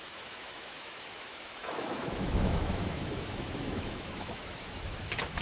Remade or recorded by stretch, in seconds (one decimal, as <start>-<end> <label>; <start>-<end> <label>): 0.0-5.4 remade